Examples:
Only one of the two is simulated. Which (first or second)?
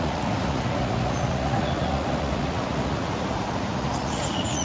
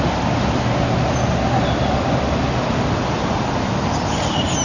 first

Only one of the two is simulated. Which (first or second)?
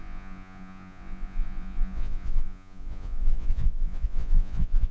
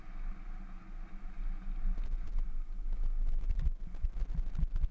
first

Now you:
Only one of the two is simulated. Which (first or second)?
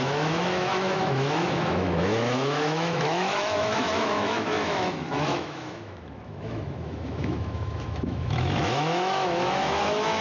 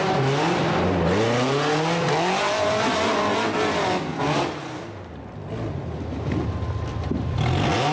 first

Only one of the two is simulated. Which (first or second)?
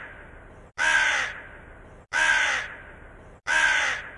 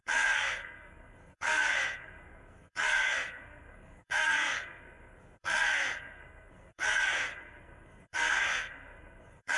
second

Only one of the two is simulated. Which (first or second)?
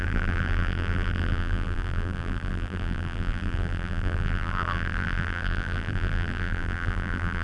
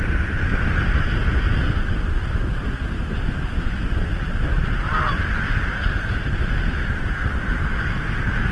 first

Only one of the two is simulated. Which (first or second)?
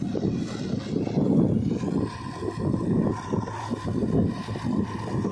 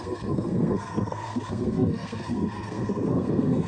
second